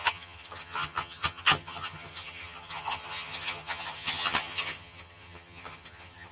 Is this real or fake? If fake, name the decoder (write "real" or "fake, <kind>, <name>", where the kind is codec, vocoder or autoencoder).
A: fake, vocoder, HiFi-GAN